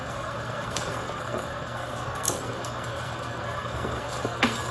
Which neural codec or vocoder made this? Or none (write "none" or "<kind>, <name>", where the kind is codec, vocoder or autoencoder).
codec, SNAC